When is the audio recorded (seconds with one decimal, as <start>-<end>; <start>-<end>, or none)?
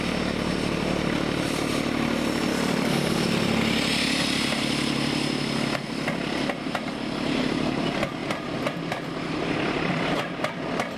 0.0-2.5; 3.2-11.0